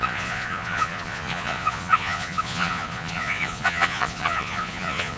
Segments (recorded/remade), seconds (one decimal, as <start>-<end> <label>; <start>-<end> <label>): 0.0-5.2 remade